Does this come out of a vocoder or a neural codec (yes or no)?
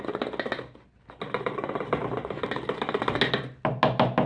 no